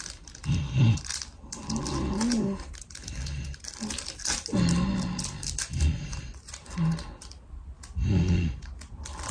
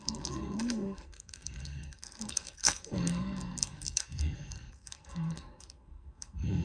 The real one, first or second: first